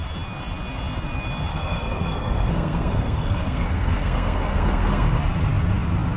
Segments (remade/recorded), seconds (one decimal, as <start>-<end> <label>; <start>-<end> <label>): 0.0-1.5 recorded; 1.5-5.2 remade; 5.2-6.2 recorded

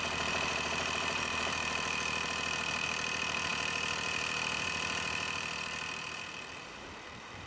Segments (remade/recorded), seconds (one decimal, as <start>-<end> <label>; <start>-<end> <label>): 0.0-7.5 remade

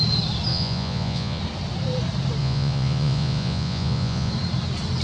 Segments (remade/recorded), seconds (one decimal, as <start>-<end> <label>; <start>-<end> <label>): 0.0-0.5 recorded; 0.5-1.4 remade; 1.4-2.4 recorded; 2.4-4.3 remade; 4.3-5.0 recorded

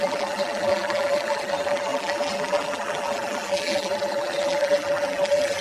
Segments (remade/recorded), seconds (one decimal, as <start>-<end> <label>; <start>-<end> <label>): 0.0-5.6 remade

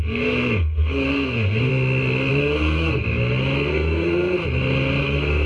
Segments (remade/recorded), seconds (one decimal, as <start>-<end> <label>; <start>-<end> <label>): 0.0-1.7 remade; 1.7-2.3 recorded; 2.3-3.0 remade; 3.0-3.7 recorded; 3.7-4.4 remade; 4.4-5.0 recorded; 5.0-5.5 remade